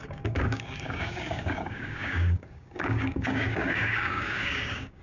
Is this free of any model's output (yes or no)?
no